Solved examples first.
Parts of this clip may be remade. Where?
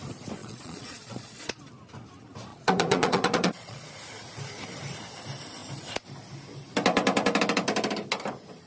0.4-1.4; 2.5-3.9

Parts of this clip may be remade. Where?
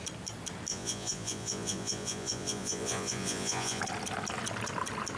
0.7-3.8